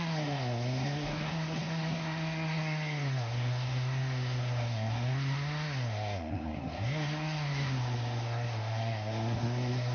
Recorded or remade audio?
remade